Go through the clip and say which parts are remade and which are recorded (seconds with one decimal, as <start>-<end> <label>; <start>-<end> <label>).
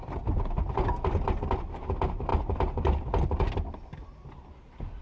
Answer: 0.0-5.0 recorded